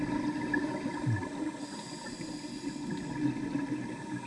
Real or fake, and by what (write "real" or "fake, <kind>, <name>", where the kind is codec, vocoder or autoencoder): real